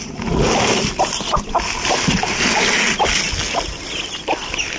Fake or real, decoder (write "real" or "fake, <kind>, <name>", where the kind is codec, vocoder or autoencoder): real